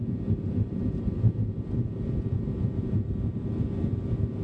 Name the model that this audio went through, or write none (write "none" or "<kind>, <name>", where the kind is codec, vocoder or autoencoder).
vocoder, BigVGAN v2